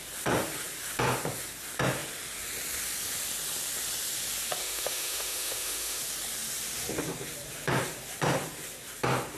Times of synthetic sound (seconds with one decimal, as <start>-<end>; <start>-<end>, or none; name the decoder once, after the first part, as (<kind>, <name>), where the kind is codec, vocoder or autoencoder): 4.6-6.0 (autoencoder, DAC-VAE)